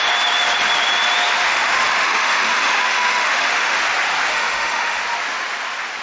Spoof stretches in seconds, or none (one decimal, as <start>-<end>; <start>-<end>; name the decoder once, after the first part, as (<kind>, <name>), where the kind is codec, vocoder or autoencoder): 1.5-3.8 (autoencoder, DAC-VAE); 4.3-5.0